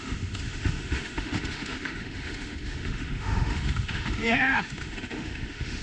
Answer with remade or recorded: remade